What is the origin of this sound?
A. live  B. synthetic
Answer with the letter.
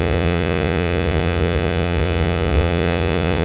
B